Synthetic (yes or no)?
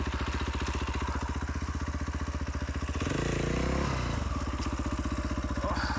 no